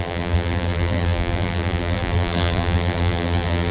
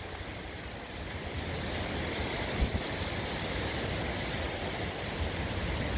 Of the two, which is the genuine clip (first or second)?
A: second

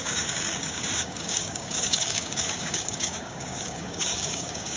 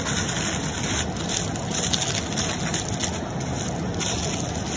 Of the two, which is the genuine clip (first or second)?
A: second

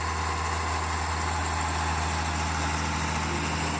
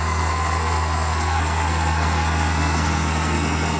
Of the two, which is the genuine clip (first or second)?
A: first